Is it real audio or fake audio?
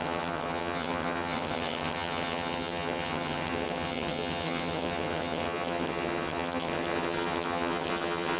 fake